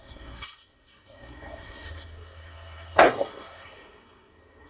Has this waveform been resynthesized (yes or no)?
yes